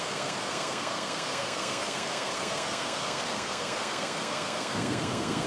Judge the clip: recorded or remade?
remade